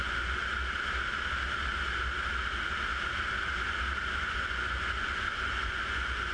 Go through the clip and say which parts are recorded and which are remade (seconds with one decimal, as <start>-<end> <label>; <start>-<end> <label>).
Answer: 0.0-0.4 remade; 0.4-4.2 recorded; 4.2-6.3 remade